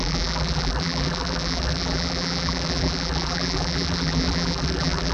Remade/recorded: remade